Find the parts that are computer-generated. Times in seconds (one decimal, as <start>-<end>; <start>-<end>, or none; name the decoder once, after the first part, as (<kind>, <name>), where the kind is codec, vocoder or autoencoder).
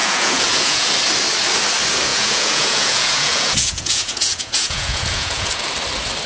0.0-0.9 (vocoder, Vocos); 2.1-5.6